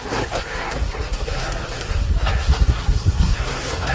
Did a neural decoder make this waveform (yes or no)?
yes